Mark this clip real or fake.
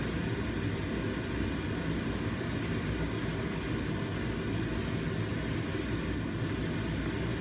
real